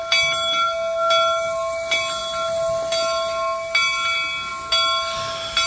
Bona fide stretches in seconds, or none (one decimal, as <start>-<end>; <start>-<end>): 0.0-5.7